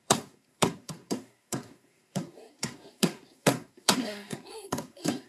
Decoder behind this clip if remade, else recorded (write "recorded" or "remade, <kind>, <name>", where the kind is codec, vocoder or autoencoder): remade, codec, SNAC